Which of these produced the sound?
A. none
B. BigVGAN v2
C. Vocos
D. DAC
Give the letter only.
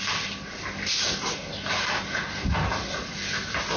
A